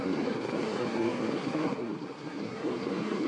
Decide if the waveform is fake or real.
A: fake